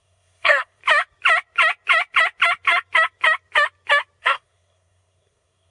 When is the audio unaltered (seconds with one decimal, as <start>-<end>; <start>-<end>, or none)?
0.8-4.2

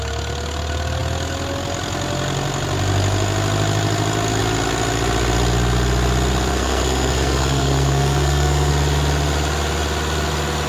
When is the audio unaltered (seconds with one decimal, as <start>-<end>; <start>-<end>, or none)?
0.0-6.5; 8.7-10.7

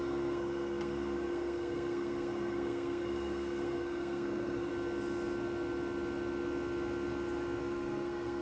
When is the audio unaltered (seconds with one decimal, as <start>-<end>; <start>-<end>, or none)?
4.7-7.6